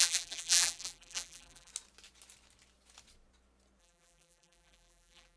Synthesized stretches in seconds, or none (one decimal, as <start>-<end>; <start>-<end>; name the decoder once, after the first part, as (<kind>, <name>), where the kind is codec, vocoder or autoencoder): 0.0-1.7 (vocoder, BigVGAN v2); 3.8-5.4